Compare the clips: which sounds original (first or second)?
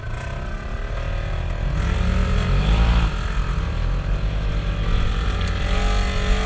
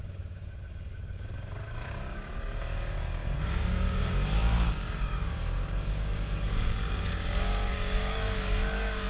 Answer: first